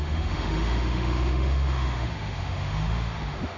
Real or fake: fake